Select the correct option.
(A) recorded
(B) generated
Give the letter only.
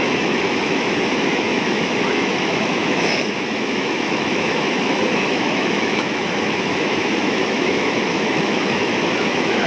B